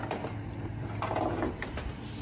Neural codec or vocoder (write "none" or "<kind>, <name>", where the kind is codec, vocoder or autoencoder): none